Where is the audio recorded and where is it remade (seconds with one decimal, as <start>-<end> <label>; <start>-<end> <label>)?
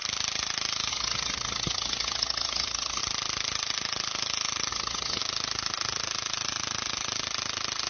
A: 0.0-0.9 recorded; 0.9-3.0 remade; 3.0-4.7 recorded; 4.7-5.2 remade; 5.2-7.9 recorded